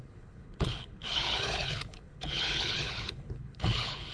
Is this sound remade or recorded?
remade